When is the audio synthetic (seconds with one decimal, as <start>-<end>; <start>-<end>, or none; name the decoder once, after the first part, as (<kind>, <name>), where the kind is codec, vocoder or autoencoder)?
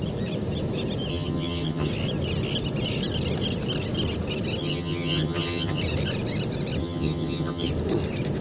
1.1-1.9 (vocoder, HiFi-GAN); 4.6-5.8; 6.8-7.7